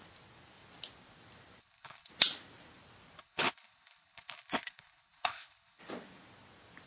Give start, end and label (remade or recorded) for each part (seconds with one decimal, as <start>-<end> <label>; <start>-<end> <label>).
0.0-1.6 recorded; 1.6-2.1 remade; 2.1-3.2 recorded; 3.2-5.8 remade; 5.8-6.9 recorded